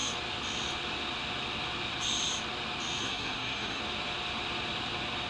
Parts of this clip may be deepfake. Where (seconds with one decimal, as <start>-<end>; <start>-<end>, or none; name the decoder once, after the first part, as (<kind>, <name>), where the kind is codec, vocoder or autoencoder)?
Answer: 3.0-3.8 (codec, SNAC)